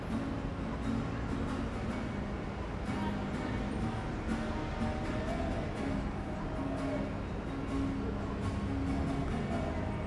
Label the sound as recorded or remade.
recorded